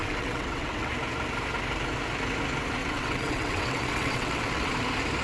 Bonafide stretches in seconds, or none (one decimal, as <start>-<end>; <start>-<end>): 0.9-2.8; 4.7-5.2